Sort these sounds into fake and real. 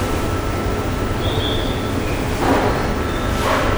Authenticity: real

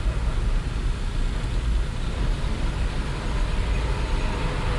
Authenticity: real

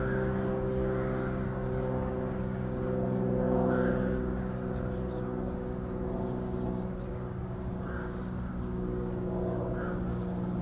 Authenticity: fake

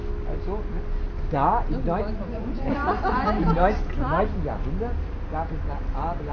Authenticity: real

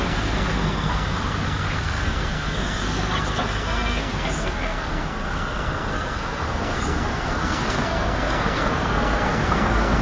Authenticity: fake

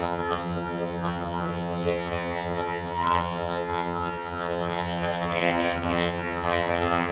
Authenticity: fake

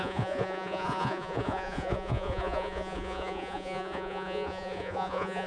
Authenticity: fake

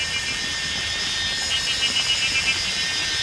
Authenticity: fake